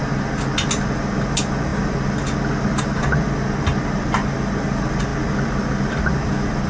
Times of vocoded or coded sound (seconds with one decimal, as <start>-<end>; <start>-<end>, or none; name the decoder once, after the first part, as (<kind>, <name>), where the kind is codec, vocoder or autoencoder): none